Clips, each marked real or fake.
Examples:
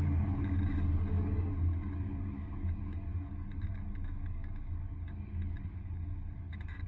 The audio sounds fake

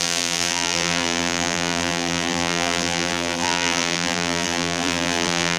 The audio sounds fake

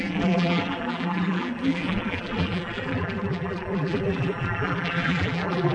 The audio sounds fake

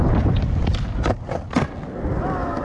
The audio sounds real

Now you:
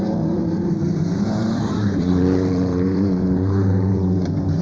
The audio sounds fake